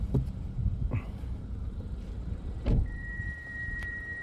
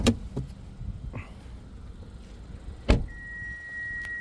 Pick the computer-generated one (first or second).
first